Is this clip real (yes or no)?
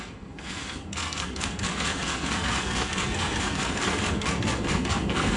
no